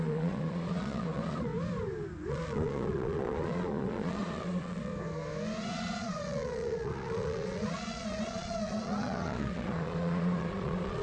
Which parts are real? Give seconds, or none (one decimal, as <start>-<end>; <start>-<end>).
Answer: 1.5-2.3; 4.9-5.7

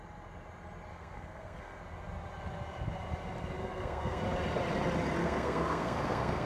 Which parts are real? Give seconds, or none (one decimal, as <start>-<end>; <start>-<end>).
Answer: 0.0-0.9; 1.8-3.6; 4.2-5.2

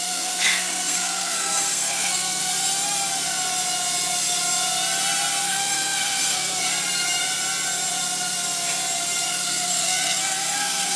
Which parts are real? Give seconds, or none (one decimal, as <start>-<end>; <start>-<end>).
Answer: 2.4-5.4; 6.6-9.3

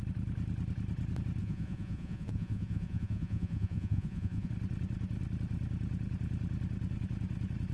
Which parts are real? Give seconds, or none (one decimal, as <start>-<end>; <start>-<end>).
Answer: 0.0-1.4; 4.5-7.7

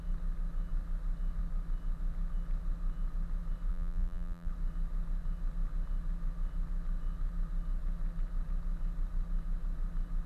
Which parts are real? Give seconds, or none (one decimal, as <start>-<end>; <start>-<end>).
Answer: 0.0-3.7; 4.5-10.3

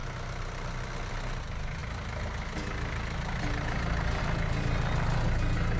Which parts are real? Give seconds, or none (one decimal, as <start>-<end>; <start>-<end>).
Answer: 0.0-5.8

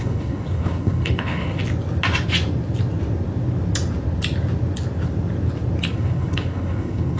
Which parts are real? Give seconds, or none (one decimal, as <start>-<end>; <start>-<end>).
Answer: 1.6-5.9